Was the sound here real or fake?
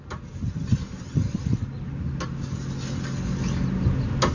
real